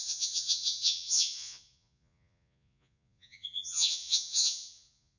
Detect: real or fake fake